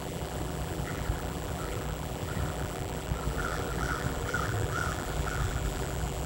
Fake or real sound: fake